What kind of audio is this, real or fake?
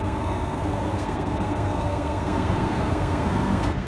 fake